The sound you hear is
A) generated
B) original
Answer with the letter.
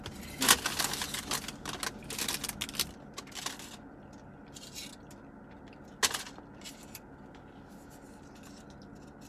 B